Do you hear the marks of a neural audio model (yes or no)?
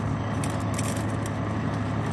no